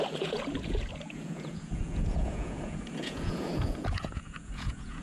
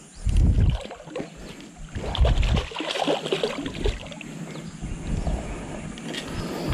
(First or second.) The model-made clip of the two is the first